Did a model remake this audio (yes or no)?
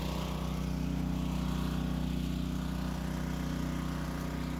no